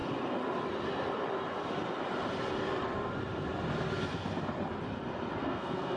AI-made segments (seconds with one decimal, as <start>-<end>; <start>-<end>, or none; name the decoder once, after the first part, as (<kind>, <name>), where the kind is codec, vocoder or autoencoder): 5.4-6.0 (codec, SNAC)